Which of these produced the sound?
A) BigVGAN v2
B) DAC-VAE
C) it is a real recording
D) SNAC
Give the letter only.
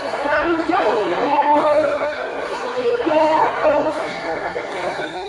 D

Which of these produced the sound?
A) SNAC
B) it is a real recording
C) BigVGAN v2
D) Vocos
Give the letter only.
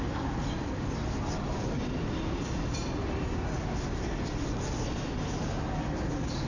B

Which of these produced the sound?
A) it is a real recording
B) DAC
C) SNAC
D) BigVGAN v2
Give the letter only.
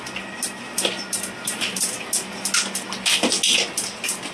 A